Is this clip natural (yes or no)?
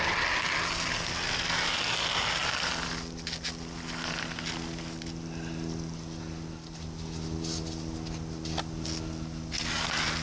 yes